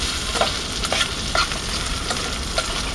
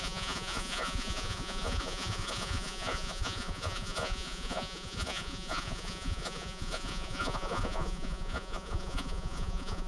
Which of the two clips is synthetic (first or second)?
second